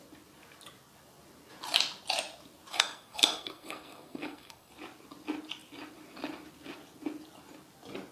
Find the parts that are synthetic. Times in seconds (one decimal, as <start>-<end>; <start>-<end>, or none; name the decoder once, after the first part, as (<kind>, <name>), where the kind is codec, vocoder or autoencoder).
2.7-4.7 (codec, SNAC)